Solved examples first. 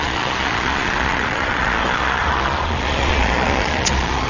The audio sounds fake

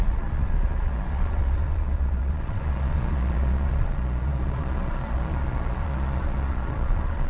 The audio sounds fake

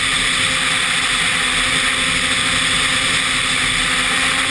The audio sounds real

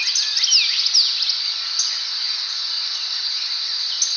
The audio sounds real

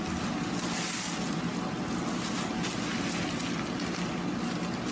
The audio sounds real